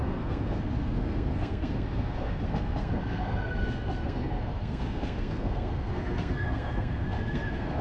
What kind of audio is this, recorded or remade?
remade